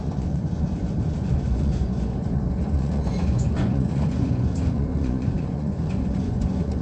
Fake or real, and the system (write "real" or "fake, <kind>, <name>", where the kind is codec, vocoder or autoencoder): fake, vocoder, Vocos